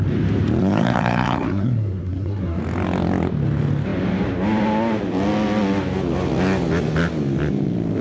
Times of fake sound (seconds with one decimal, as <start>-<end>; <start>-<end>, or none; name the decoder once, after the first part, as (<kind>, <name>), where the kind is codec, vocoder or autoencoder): 0.6-2.6 (codec, SNAC)